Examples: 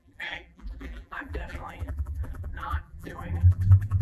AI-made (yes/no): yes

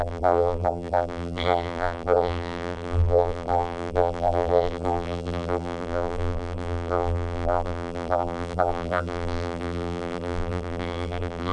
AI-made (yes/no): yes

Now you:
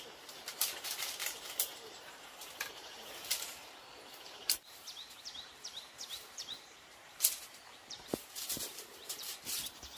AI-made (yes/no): yes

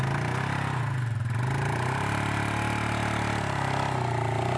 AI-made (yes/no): no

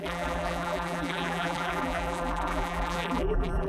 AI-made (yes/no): yes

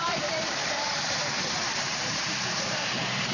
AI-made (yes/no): yes